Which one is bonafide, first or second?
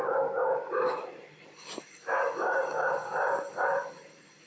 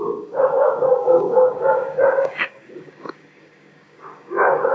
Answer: first